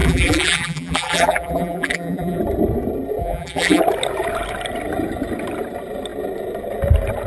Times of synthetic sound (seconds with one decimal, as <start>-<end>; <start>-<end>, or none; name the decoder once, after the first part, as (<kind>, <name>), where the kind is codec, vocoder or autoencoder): 0.0-2.4 (vocoder, BigVGAN v2); 3.2-3.8